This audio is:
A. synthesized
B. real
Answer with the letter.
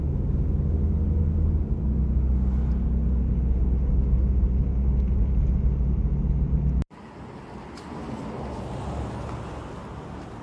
B